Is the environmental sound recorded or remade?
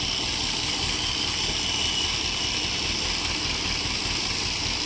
recorded